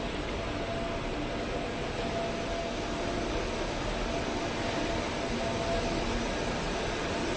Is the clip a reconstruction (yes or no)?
no